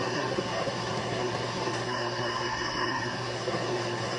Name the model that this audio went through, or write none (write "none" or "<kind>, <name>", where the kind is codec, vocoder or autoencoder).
codec, SNAC